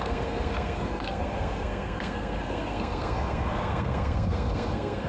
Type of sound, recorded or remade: remade